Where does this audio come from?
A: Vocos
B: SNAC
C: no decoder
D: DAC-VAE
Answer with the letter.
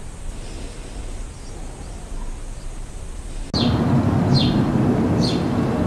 C